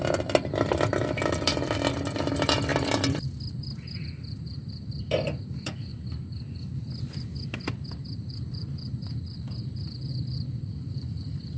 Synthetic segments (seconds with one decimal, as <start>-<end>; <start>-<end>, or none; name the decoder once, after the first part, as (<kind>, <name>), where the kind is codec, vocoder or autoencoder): 0.0-1.5 (vocoder, BigVGAN v2); 2.3-5.9; 8.0-11.6